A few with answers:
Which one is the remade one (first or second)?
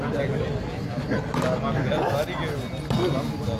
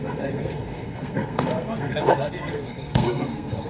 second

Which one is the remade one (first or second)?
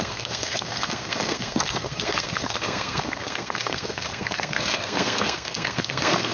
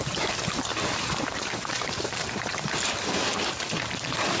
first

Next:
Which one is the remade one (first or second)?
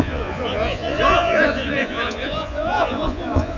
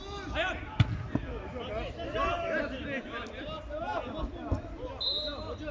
first